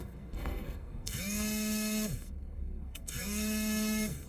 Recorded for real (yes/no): no